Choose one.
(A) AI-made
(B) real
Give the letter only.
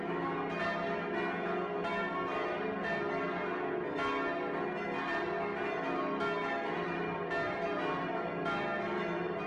B